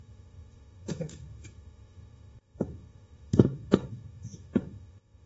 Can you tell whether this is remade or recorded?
remade